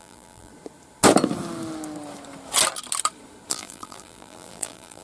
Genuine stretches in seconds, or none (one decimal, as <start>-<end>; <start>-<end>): 0.5-3.5

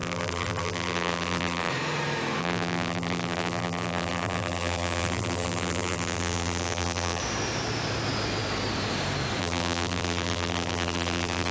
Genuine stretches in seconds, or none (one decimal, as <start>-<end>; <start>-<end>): 1.7-2.4; 7.2-9.4